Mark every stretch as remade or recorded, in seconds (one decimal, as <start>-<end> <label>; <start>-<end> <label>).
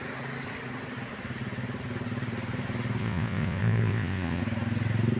0.0-3.0 recorded; 3.0-4.4 remade; 4.4-5.2 recorded